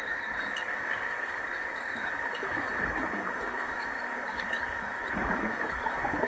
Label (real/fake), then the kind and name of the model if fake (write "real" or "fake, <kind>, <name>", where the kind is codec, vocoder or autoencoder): fake, codec, DAC